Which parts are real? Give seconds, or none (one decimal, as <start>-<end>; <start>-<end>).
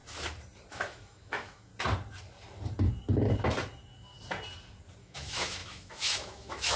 0.0-0.7; 1.7-5.0